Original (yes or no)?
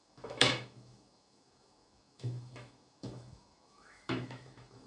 no